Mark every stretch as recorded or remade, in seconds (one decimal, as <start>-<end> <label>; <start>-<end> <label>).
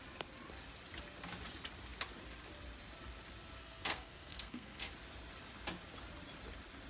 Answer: 0.0-3.6 recorded; 3.6-4.9 remade; 4.9-6.9 recorded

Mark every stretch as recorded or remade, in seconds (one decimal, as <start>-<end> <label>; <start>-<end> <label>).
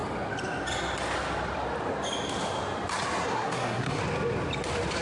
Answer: 0.0-3.2 recorded; 3.2-4.0 remade; 4.0-5.0 recorded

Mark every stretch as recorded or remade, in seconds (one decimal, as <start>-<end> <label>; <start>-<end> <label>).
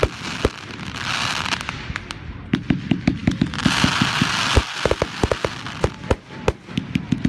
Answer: 0.0-7.3 recorded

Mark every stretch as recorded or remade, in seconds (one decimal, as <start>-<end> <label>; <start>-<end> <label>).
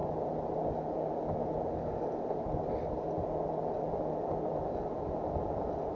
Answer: 0.0-5.9 recorded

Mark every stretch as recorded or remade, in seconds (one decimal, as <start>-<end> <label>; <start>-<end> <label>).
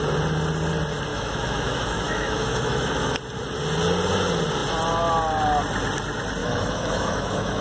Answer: 0.0-1.1 recorded; 1.1-3.1 remade; 3.1-6.4 recorded; 6.4-7.6 remade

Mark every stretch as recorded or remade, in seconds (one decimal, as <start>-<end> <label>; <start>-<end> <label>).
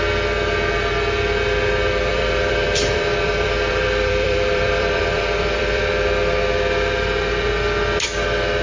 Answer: 0.0-2.1 recorded; 2.1-5.8 remade; 5.8-8.6 recorded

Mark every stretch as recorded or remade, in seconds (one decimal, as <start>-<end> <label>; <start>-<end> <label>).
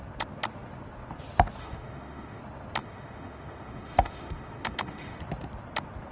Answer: 0.0-1.6 recorded; 1.6-2.4 remade; 2.4-2.8 recorded; 2.8-5.2 remade; 5.2-6.1 recorded